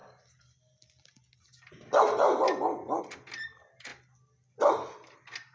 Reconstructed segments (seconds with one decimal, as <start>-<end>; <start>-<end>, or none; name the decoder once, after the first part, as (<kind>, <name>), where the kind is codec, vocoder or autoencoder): none